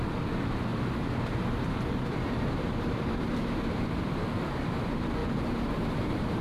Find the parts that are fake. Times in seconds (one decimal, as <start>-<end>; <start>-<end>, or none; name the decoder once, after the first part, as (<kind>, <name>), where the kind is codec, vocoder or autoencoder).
0.7-4.5 (vocoder, BigVGAN v2); 5.2-6.4

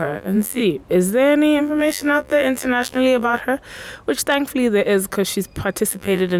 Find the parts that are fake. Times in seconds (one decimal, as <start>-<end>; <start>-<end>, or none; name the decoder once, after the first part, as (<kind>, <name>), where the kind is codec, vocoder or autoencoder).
0.0-0.6 (vocoder, BigVGAN v2); 1.6-3.4; 5.9-6.4

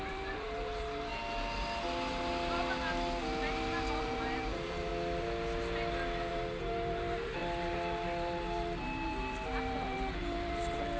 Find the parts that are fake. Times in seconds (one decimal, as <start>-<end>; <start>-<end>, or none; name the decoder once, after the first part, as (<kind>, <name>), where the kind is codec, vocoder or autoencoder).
0.0-1.1 (vocoder, BigVGAN v2); 4.0-4.9; 6.3-11.0

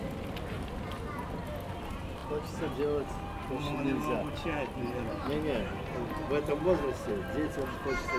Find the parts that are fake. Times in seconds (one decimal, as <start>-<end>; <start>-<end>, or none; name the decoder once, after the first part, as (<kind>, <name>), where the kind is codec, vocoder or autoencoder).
none

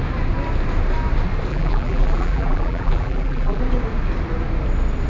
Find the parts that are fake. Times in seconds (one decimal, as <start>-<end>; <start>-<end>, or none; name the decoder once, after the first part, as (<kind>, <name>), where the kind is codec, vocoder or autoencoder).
1.5-3.6 (vocoder, BigVGAN v2)